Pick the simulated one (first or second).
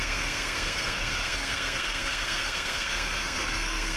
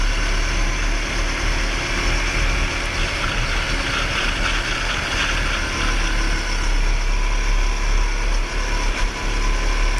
first